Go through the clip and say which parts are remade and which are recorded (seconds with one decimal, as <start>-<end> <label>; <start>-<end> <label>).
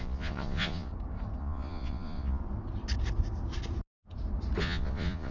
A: 0.0-0.9 remade; 0.9-1.4 recorded; 1.4-2.4 remade; 2.4-4.6 recorded; 4.6-5.3 remade